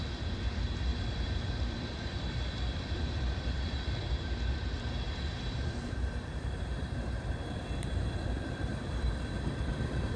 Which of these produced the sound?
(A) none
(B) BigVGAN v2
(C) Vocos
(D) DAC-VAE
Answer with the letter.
B